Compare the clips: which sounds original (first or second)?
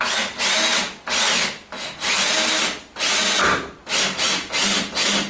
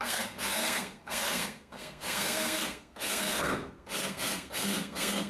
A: first